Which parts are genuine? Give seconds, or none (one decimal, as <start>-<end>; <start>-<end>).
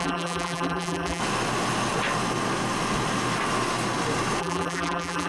1.2-4.4